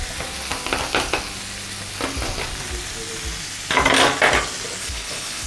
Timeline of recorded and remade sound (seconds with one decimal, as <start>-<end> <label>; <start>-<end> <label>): 0.0-4.8 recorded; 4.8-5.5 remade